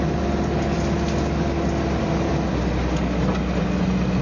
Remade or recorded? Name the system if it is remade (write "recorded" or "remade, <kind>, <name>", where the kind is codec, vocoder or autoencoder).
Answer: recorded